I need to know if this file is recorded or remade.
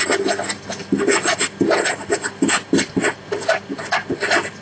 recorded